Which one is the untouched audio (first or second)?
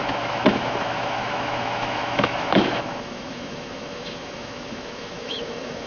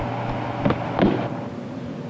second